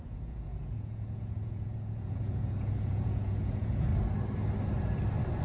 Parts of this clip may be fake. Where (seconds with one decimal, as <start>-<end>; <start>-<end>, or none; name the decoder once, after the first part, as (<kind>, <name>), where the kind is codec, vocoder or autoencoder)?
0.0-3.9 (vocoder, Vocos)